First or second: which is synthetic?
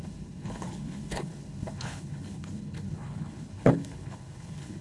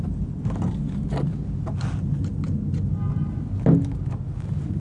first